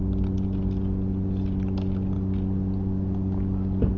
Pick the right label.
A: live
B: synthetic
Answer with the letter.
A